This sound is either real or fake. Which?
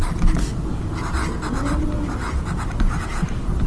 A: real